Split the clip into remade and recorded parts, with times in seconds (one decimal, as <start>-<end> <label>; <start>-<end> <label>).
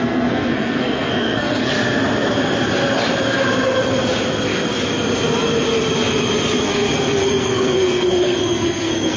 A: 0.0-1.7 remade; 1.7-6.6 recorded; 6.6-9.2 remade